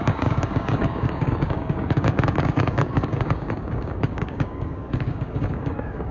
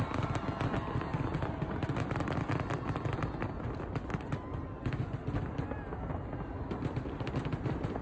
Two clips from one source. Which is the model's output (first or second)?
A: first